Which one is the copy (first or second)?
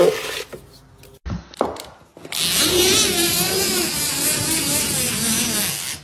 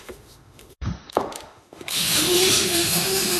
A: second